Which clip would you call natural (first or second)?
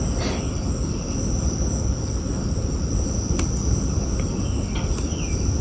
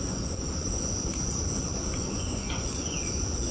first